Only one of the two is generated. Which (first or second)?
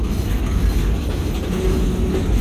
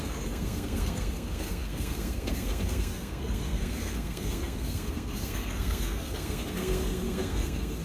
second